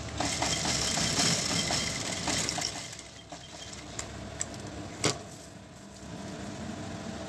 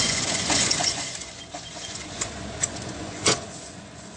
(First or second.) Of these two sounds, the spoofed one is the second